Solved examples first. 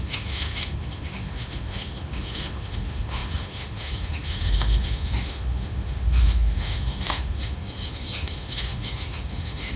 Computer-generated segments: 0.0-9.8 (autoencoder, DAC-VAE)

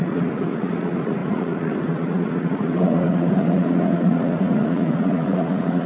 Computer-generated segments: 0.0-5.9 (vocoder, Vocos)

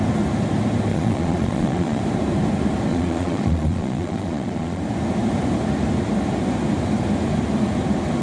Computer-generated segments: 0.9-2.0 (vocoder, Vocos); 2.9-4.8